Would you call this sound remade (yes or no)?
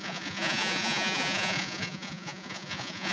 yes